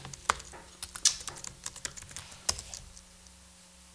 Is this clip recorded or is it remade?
recorded